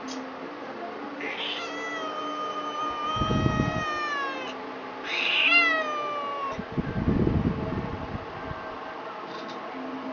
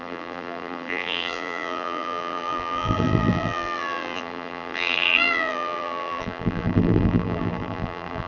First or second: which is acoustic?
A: first